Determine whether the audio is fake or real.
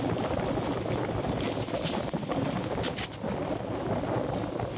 real